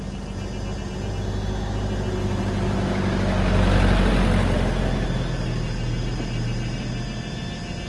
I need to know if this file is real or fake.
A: real